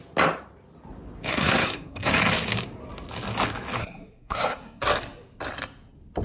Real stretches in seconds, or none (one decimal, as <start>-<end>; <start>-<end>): 0.0-1.3; 2.1-3.8; 4.8-6.2